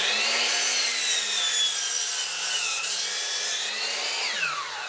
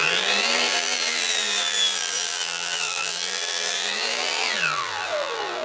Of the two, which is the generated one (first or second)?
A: second